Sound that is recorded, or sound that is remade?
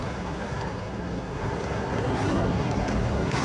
remade